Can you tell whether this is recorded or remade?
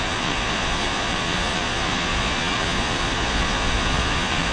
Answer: remade